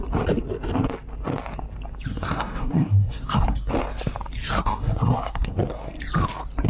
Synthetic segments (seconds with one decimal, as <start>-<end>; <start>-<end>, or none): 2.1-3.7; 4.4-6.0